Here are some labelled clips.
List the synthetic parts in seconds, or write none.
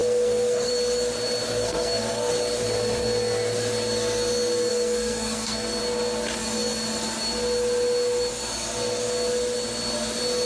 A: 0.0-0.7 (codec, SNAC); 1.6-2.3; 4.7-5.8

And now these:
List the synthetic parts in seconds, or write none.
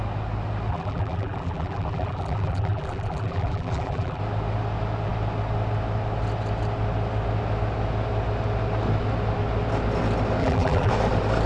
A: 0.7-4.2 (vocoder, BigVGAN v2); 10.4-10.9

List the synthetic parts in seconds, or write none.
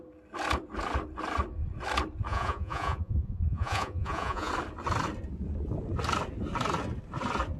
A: 2.3-4.5 (vocoder, Vocos)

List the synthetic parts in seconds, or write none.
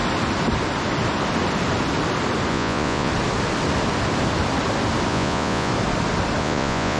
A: 2.5-3.1 (vocoder, Vocos); 5.1-5.7; 6.4-7.0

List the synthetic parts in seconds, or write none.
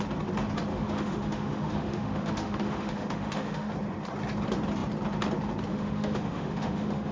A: 0.7-3.7 (autoencoder, DAC-VAE); 5.7-7.1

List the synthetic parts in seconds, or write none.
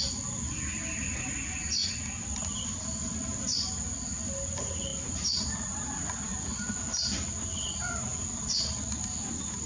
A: none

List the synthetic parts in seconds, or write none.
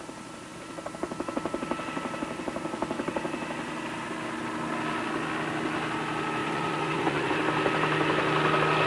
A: 6.4-7.3 (vocoder, Vocos)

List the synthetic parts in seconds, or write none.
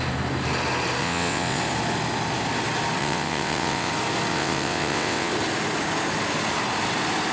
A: 1.0-1.6 (vocoder, WaveNeXt); 3.0-3.9; 4.3-5.3